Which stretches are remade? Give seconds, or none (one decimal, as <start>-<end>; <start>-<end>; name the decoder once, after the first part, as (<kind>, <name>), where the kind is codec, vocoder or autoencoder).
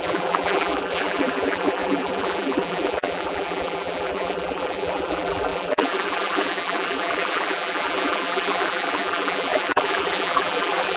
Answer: 0.0-11.0 (vocoder, BigVGAN v2)